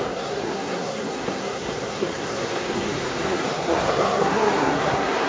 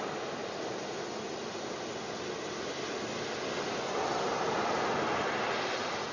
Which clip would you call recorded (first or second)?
second